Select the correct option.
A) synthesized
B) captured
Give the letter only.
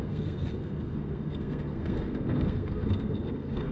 A